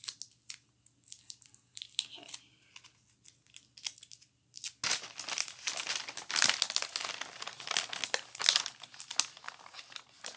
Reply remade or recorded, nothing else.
recorded